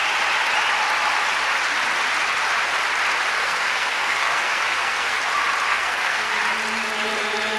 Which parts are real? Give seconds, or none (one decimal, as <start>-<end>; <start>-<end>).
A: 0.0-3.4; 5.2-5.7; 6.3-7.6